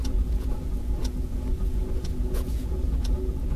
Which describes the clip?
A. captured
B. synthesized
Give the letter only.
B